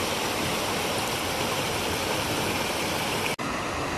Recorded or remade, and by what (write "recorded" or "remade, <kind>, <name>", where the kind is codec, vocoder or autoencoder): recorded